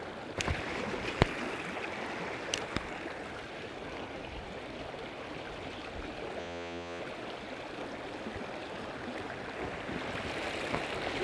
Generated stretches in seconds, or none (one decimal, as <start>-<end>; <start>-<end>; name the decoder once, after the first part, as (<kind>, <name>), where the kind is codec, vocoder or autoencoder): 6.4-7.0 (vocoder, Vocos)